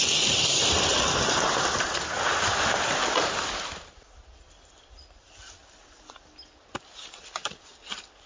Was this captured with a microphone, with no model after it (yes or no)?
yes